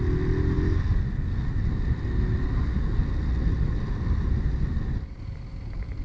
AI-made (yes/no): no